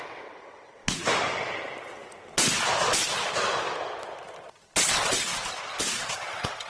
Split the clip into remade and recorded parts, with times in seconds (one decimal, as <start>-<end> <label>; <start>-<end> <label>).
0.0-0.8 remade; 0.8-4.8 recorded; 4.8-5.3 remade; 5.3-6.0 recorded; 6.0-6.7 remade